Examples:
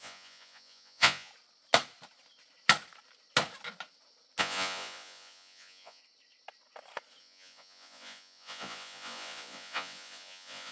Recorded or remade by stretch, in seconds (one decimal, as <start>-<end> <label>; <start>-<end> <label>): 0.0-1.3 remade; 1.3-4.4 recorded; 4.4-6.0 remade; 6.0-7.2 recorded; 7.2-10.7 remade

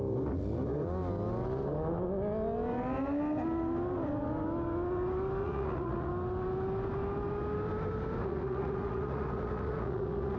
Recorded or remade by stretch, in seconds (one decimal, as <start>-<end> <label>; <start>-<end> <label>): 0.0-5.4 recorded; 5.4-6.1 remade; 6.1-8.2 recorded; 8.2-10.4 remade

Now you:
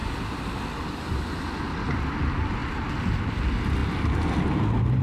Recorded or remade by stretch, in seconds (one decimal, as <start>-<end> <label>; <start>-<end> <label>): 0.0-5.0 recorded

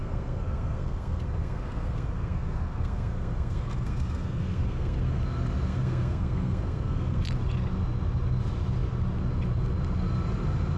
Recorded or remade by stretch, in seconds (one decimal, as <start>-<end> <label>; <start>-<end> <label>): 0.0-5.2 remade; 5.2-5.7 recorded; 5.7-7.2 remade; 7.2-10.8 recorded

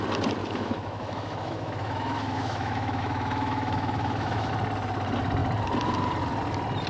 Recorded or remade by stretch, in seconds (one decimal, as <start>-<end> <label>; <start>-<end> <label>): 0.0-0.4 recorded; 0.4-4.5 remade; 4.5-6.9 recorded

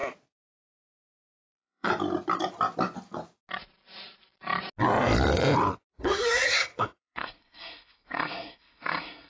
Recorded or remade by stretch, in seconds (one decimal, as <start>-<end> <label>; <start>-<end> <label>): 0.0-1.3 recorded; 1.3-1.9 remade; 1.9-5.9 recorded; 5.9-9.3 remade

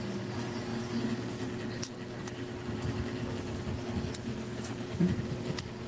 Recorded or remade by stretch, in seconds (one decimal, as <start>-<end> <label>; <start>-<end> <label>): 0.0-4.3 recorded; 4.3-5.2 remade; 5.2-5.9 recorded

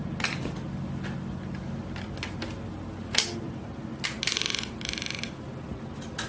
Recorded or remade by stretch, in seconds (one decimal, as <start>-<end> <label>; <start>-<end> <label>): 0.0-6.3 recorded